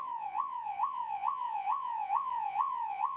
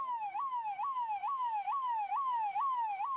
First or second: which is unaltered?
second